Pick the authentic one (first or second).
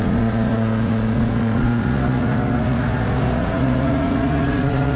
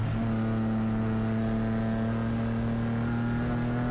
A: second